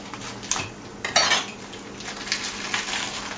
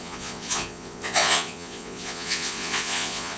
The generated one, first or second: second